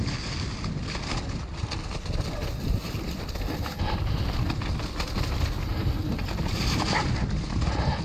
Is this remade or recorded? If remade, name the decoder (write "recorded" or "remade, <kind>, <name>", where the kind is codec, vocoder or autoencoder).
recorded